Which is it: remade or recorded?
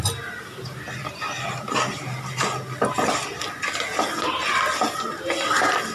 recorded